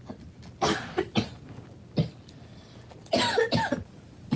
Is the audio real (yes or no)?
yes